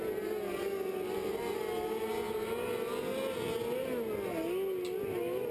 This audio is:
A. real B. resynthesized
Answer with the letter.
A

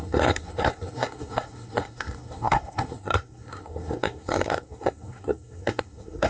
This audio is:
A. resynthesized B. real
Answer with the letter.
A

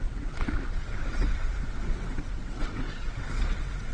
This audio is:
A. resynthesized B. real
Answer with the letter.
A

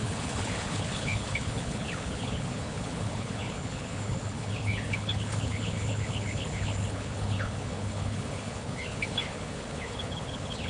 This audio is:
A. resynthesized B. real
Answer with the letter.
A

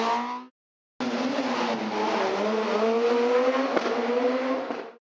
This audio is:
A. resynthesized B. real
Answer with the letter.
B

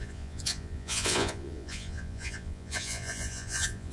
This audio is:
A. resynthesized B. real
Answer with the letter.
A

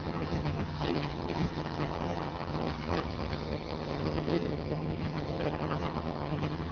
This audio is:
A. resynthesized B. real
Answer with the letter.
A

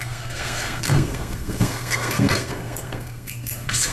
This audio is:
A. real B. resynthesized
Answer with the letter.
B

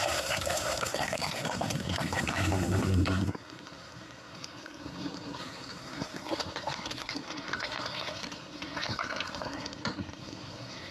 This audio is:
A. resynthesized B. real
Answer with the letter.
A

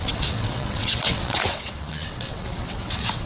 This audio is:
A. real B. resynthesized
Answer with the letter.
B